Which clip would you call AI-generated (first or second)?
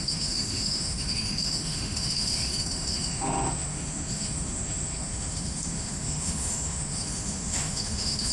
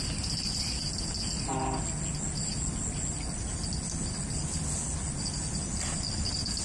first